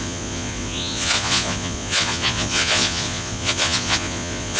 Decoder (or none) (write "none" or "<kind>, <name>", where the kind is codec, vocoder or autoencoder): vocoder, Vocos